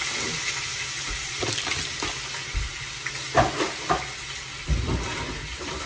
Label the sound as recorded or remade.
recorded